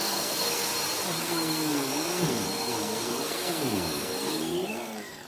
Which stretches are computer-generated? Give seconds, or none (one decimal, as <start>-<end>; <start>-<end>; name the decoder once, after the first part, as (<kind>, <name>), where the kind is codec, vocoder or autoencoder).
0.0-0.7 (codec, SNAC); 1.2-5.3